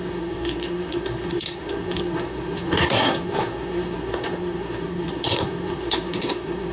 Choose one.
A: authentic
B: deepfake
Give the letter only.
B